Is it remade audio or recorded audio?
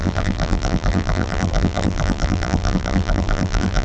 remade